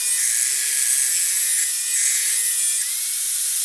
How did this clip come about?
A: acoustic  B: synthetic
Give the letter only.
A